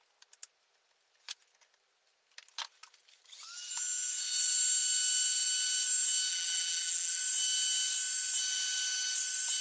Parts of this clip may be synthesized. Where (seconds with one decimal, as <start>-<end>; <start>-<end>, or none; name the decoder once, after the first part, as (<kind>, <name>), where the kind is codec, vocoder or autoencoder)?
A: 6.3-7.2 (vocoder, BigVGAN v2)